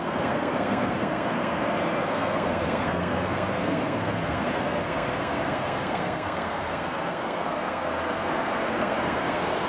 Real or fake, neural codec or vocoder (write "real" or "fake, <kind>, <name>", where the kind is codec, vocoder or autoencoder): fake, codec, SNAC